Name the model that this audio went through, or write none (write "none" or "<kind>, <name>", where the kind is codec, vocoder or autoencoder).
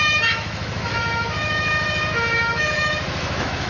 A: autoencoder, DAC-VAE